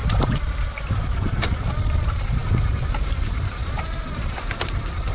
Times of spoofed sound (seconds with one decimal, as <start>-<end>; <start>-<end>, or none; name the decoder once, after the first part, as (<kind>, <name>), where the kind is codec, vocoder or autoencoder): 0.0-5.1 (vocoder, BigVGAN v2)